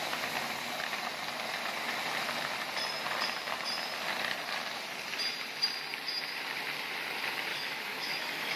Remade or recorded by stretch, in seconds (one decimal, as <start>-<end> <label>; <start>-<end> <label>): 0.0-7.5 recorded; 7.5-8.6 remade